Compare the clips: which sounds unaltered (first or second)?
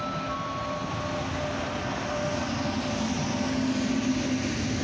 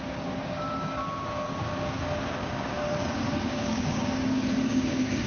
first